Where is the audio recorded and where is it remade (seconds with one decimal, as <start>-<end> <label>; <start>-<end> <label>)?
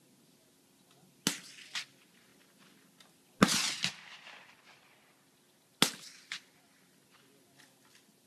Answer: 0.0-8.3 recorded